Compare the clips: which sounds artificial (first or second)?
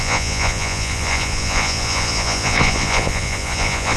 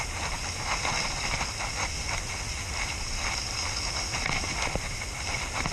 first